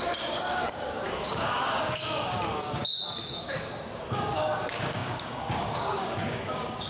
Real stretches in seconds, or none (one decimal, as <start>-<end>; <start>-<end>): none